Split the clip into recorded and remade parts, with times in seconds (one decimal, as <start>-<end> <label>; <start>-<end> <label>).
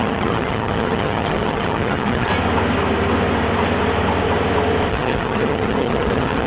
0.0-2.3 remade; 2.3-4.9 recorded; 4.9-6.5 remade